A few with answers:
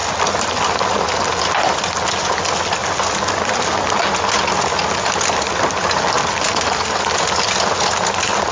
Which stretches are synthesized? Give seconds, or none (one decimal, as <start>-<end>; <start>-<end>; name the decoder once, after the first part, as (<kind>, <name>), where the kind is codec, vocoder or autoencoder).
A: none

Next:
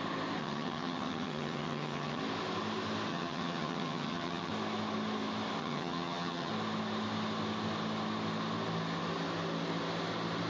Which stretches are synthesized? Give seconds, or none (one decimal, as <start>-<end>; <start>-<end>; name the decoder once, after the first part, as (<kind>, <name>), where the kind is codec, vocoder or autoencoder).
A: 0.4-2.2 (vocoder, HiFi-GAN); 3.1-4.5; 5.6-6.5

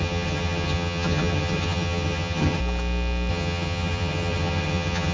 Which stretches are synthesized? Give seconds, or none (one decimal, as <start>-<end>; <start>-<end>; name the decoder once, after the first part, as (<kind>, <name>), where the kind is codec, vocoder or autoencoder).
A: 0.0-2.6 (vocoder, HiFi-GAN); 3.3-5.1

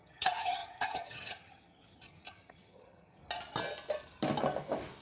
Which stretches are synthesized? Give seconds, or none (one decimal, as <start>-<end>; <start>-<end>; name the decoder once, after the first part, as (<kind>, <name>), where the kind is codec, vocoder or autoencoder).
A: 0.0-3.2 (vocoder, HiFi-GAN)

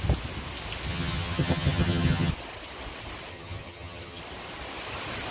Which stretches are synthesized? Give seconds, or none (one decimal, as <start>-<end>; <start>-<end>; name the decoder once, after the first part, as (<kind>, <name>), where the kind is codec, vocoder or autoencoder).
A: 0.9-2.3 (vocoder, HiFi-GAN); 3.3-4.2

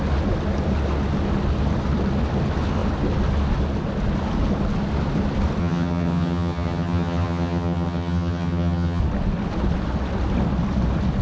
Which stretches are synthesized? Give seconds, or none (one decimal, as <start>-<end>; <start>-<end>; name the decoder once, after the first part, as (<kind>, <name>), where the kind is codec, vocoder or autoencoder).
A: 5.6-9.0 (vocoder, HiFi-GAN)